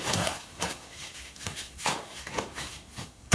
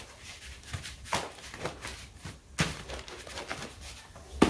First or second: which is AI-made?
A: first